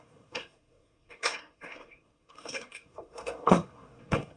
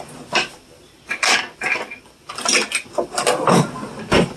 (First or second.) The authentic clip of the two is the second